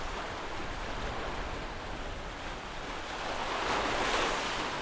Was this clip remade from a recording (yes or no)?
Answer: no